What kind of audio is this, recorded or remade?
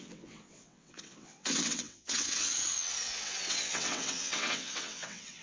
remade